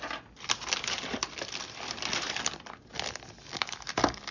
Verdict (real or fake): real